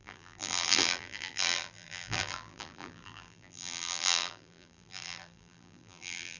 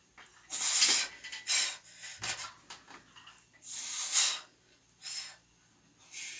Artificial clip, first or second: first